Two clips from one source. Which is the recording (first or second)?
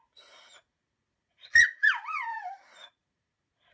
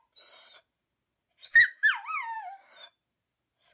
second